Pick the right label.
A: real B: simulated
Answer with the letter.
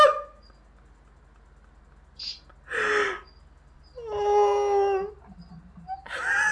A